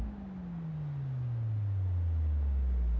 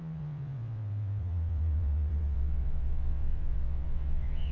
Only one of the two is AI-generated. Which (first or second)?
second